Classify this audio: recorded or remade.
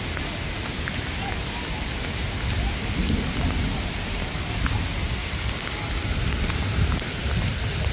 recorded